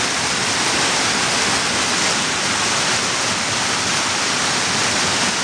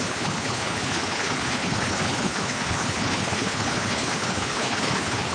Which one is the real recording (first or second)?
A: first